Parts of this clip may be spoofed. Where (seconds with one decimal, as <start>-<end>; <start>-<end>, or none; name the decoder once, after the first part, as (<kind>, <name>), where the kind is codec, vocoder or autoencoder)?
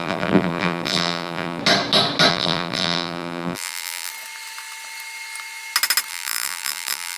0.0-1.6 (vocoder, BigVGAN v2); 2.3-4.1; 6.1-7.2